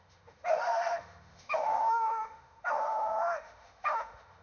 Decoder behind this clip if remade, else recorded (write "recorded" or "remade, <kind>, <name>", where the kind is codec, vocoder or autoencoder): remade, autoencoder, DAC-VAE